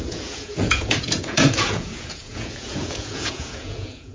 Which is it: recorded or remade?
remade